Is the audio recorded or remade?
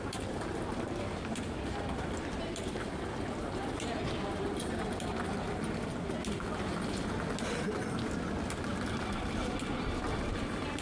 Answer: recorded